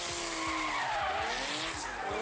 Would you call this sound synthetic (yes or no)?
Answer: no